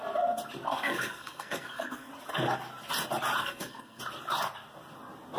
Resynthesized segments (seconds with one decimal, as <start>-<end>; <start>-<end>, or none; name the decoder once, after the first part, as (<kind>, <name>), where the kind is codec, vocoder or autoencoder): 0.7-2.1 (codec, SNAC); 3.4-4.0